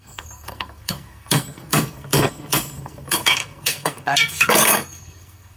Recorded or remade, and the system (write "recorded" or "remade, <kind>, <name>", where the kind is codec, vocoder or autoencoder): remade, codec, SNAC